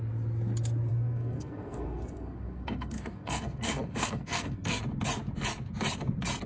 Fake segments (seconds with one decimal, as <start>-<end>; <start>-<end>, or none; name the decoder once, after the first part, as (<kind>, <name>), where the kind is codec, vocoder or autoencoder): 0.9-4.8 (codec, SNAC)